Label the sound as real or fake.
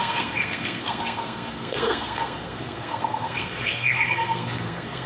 fake